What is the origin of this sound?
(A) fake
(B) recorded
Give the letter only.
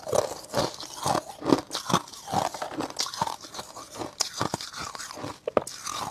B